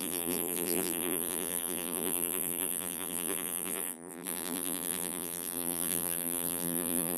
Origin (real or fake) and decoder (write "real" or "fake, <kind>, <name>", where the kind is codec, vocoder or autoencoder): fake, vocoder, BigVGAN v2